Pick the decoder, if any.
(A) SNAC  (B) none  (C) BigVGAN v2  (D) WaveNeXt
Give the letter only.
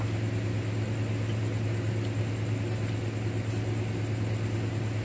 B